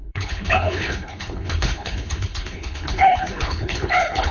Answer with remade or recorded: remade